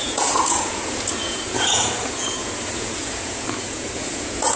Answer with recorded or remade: remade